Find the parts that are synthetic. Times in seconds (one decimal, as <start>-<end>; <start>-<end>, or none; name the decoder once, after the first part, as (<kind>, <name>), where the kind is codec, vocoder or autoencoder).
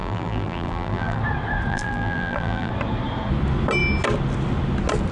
0.0-1.2 (vocoder, BigVGAN v2); 1.7-2.7